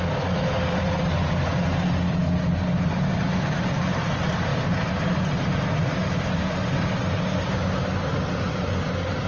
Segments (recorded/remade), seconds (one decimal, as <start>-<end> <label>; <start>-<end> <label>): 0.0-9.3 recorded

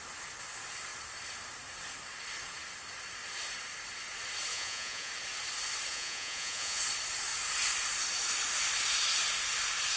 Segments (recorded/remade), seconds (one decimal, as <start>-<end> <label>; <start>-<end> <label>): 0.0-4.5 recorded; 4.5-5.1 remade; 5.1-5.9 recorded; 5.9-6.8 remade; 6.8-10.0 recorded

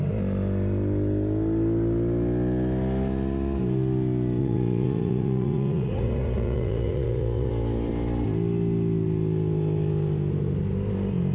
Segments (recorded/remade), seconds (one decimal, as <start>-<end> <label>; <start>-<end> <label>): 0.0-4.4 recorded; 4.4-7.5 remade; 7.5-11.3 recorded

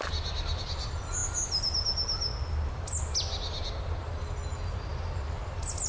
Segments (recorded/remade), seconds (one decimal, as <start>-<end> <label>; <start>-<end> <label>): 0.0-5.9 recorded

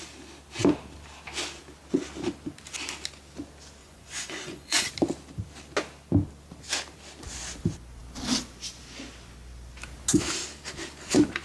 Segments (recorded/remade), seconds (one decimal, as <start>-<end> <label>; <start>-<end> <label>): 0.0-3.8 recorded; 3.8-4.9 remade; 4.9-11.4 recorded

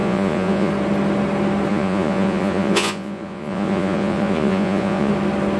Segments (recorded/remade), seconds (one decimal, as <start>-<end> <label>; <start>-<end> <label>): 0.0-0.7 remade; 0.7-1.7 recorded; 1.7-5.1 remade; 5.1-5.6 recorded